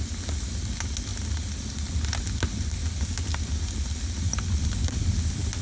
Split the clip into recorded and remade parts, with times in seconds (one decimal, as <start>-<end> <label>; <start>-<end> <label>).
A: 0.0-5.6 recorded

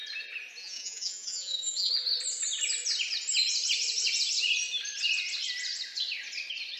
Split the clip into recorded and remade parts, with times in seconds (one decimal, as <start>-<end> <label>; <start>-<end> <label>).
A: 0.0-0.6 recorded; 0.6-1.9 remade; 1.9-6.8 recorded

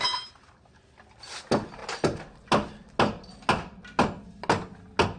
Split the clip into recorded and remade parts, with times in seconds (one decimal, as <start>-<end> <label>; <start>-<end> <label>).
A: 0.0-5.2 recorded

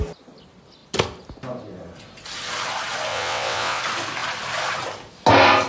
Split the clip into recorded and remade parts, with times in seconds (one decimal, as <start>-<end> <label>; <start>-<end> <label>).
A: 0.0-3.1 recorded; 3.1-3.8 remade; 3.8-5.7 recorded

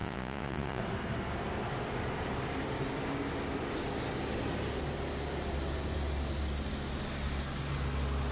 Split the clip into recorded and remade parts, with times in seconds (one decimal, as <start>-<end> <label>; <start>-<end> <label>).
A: 0.0-0.8 remade; 0.8-8.3 recorded